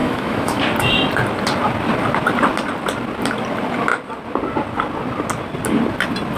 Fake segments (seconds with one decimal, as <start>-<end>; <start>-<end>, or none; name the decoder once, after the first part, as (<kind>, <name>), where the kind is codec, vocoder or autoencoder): 0.0-0.6 (autoencoder, DAC-VAE)